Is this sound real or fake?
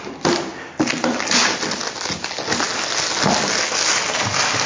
real